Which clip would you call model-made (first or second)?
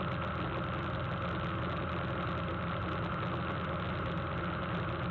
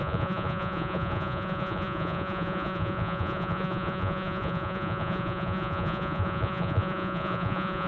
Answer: second